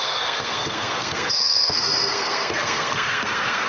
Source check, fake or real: fake